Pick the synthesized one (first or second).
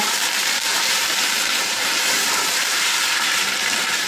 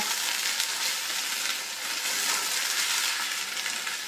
first